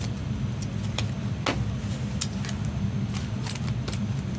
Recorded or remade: recorded